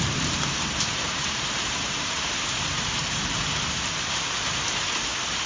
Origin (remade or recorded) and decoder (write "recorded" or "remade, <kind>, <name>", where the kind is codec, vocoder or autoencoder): remade, vocoder, BigVGAN v2